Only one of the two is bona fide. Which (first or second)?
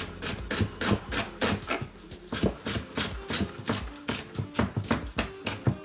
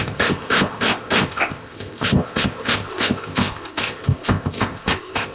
first